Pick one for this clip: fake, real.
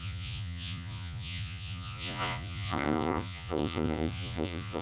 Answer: fake